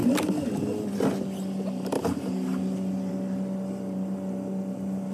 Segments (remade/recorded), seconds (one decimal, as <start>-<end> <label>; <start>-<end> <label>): 0.0-5.1 recorded